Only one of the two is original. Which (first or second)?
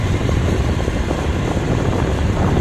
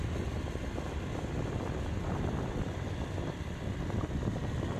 second